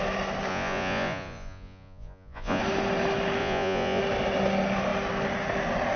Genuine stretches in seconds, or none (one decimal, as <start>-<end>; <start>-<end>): 0.0-0.5; 2.6-3.4; 4.0-6.0